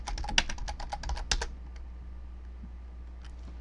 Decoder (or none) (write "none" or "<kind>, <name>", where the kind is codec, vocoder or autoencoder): none